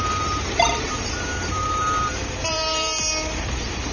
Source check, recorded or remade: remade